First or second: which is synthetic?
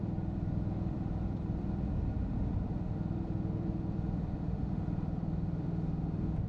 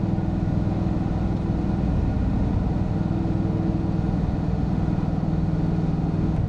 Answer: first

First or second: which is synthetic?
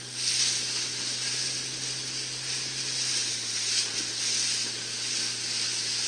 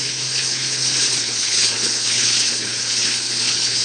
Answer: second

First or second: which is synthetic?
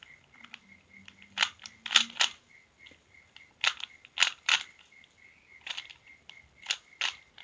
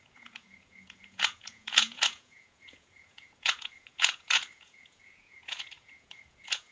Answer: second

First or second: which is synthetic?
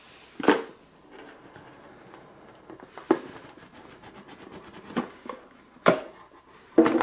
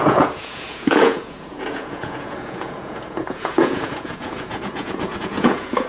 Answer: second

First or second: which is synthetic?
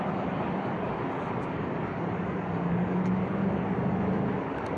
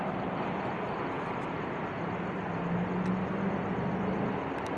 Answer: first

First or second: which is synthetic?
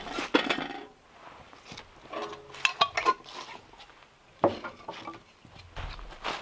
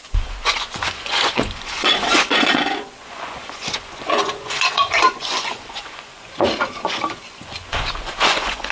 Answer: second